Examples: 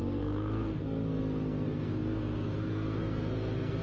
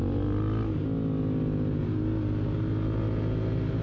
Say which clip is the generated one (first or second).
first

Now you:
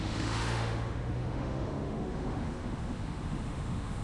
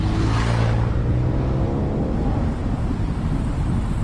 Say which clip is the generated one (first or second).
first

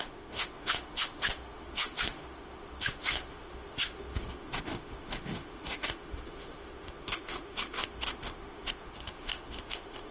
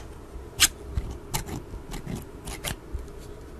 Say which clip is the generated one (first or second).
first